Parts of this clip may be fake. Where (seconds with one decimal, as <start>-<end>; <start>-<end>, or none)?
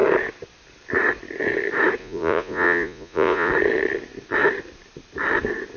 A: 2.0-3.5